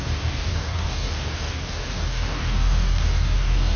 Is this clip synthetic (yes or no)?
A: yes